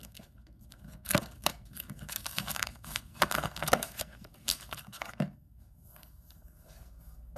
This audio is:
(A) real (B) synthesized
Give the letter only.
B